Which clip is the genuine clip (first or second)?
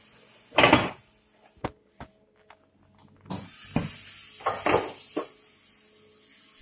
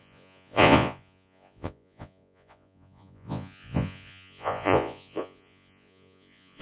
first